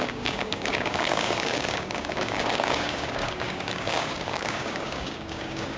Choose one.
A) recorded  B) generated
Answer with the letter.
B